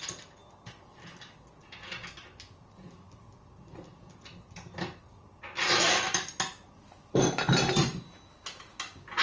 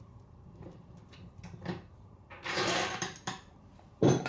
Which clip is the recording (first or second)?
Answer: first